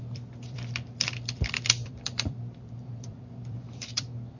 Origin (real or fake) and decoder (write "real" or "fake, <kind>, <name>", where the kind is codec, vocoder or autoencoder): fake, vocoder, BigVGAN v2